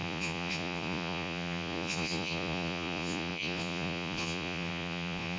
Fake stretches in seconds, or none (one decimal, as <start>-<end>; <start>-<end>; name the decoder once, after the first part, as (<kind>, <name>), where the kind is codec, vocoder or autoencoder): 0.0-5.4 (vocoder, Vocos)